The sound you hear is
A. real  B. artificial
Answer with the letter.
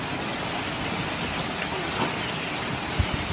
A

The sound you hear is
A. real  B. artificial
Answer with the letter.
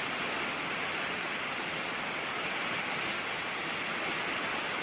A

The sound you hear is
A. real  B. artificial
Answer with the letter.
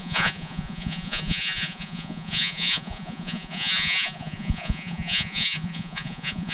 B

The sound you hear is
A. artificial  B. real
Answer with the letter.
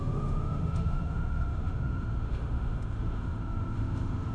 A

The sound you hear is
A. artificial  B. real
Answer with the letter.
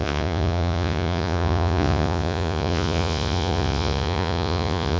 A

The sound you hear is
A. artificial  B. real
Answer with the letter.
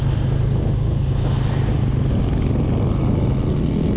B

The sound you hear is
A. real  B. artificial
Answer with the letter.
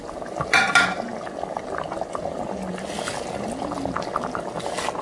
A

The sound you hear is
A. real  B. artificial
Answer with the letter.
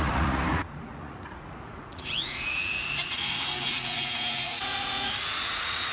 B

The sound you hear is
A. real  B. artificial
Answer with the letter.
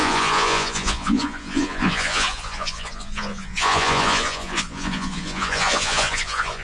B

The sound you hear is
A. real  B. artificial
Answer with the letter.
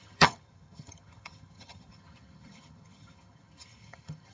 B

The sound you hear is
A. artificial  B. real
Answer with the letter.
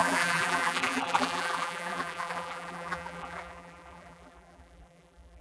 A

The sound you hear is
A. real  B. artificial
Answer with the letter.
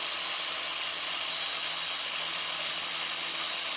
A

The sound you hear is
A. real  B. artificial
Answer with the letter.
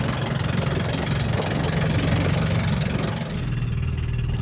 A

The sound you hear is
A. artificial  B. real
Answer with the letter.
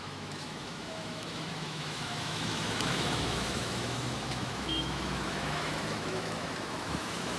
A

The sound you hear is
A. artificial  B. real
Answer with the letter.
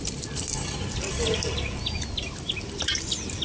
B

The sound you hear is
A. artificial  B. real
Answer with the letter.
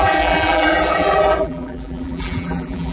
A